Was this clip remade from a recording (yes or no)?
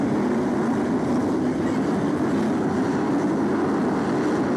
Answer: no